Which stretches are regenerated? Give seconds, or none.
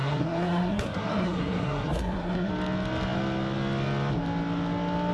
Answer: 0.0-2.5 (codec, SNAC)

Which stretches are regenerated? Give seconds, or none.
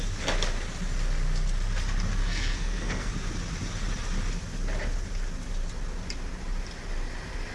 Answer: 2.2-3.1 (codec, SNAC)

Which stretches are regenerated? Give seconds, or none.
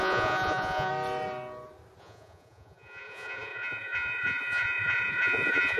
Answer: 0.0-0.9 (vocoder, Vocos); 2.0-5.8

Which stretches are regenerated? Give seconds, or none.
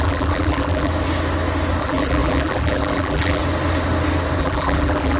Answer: 0.0-0.9 (vocoder, BigVGAN v2); 1.8-3.4; 4.4-5.2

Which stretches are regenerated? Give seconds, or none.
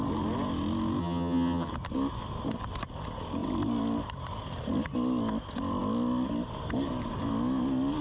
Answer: 1.0-1.7 (vocoder, HiFi-GAN)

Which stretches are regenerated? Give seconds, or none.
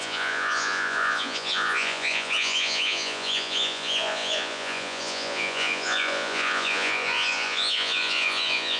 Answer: 0.0-8.8 (vocoder, Vocos)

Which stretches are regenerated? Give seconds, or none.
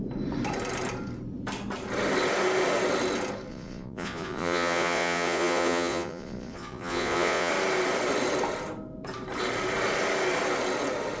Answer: 3.5-7.5 (vocoder, Vocos)